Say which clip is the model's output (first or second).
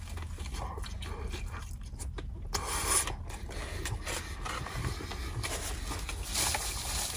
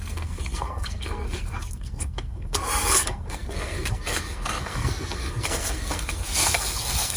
second